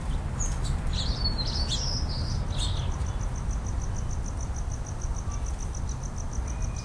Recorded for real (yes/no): yes